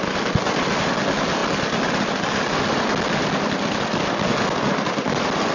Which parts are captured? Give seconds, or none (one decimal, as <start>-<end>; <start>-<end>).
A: 0.0-5.5